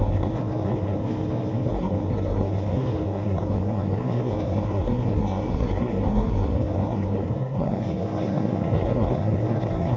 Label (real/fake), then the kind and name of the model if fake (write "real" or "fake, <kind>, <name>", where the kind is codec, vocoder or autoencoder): fake, codec, SNAC